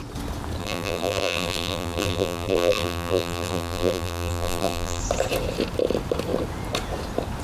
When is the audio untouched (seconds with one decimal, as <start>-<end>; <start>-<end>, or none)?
0.0-0.6; 5.0-7.4